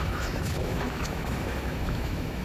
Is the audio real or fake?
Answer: fake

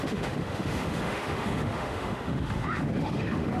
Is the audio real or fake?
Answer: fake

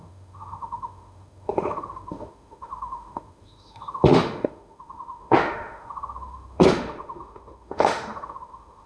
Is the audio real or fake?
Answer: fake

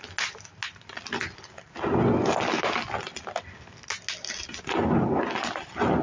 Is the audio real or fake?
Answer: real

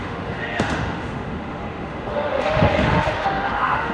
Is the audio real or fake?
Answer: fake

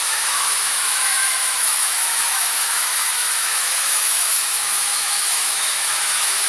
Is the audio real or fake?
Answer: fake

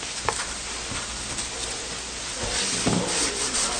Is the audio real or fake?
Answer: real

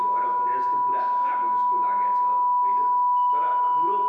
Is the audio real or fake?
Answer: real